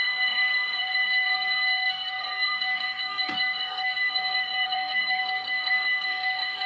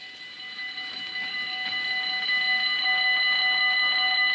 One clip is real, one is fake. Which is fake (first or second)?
first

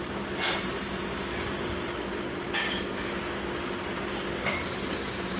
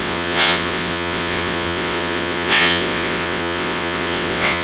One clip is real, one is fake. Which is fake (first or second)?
second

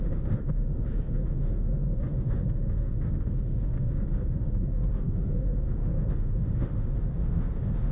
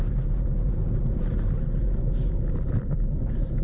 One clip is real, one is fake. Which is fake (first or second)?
first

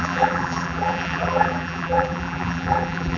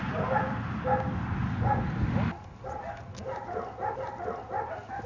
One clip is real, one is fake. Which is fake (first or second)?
first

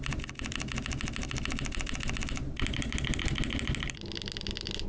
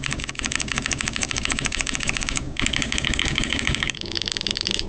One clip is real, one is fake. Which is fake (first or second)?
second